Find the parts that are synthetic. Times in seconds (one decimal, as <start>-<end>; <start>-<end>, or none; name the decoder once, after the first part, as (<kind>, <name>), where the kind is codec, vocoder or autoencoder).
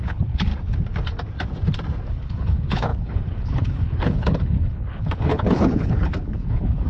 0.0-0.5 (codec, HILCodec); 2.1-6.9